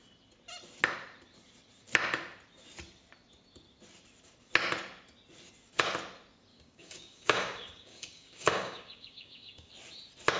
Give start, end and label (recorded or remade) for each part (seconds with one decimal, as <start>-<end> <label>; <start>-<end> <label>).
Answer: 0.0-6.5 recorded; 6.5-9.7 remade; 9.7-10.4 recorded